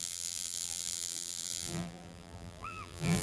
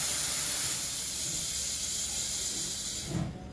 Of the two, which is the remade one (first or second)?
first